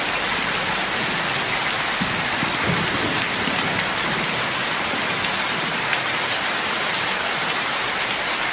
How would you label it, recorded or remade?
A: recorded